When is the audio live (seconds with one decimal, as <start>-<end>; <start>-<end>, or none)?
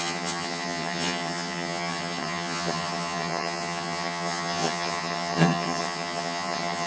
none